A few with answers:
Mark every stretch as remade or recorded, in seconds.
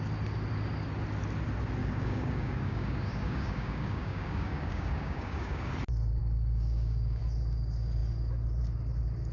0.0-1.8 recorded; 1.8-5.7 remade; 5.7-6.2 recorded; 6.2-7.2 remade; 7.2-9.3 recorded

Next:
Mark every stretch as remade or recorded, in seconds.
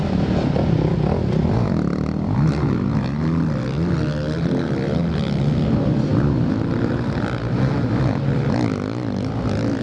0.0-9.8 recorded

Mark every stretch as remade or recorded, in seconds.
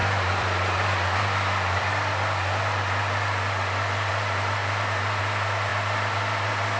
0.0-4.1 remade; 4.1-4.6 recorded; 4.6-5.2 remade; 5.2-6.8 recorded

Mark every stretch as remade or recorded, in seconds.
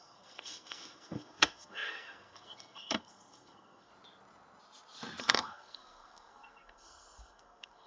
0.0-3.9 remade; 3.9-5.2 recorded; 5.2-7.9 remade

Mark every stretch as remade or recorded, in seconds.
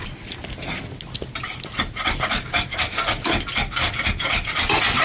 0.0-5.0 recorded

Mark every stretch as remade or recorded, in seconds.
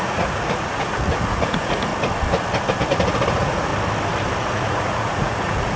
0.0-1.9 remade; 1.9-3.3 recorded; 3.3-3.7 remade; 3.7-4.4 recorded; 4.4-5.8 remade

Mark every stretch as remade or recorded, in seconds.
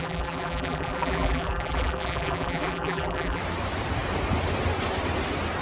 0.0-3.4 remade; 3.4-5.6 recorded